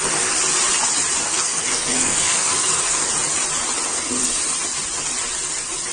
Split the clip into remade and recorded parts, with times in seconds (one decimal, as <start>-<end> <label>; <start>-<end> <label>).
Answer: 0.0-1.2 recorded; 1.2-3.1 remade; 3.1-3.9 recorded; 3.9-4.4 remade; 4.4-5.9 recorded